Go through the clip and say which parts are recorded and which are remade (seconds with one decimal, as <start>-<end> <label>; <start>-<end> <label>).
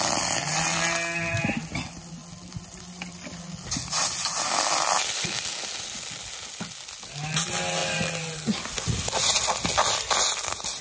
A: 0.0-10.8 recorded